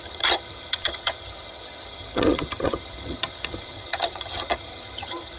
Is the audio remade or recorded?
remade